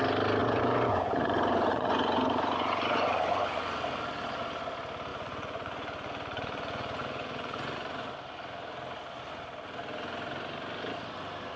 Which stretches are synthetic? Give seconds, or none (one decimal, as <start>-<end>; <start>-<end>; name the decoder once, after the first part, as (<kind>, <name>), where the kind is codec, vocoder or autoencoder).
0.4-3.7 (vocoder, Vocos); 5.1-8.1